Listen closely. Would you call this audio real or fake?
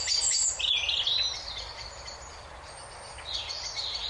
real